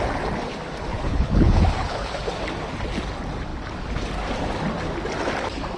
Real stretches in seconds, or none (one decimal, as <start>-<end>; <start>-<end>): 0.0-0.9; 2.2-5.8